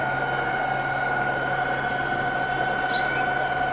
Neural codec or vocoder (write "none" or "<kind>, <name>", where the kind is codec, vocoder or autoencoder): none